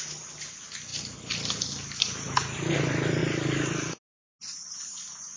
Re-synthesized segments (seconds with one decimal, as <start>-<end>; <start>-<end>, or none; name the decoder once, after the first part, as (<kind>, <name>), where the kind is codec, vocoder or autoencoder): none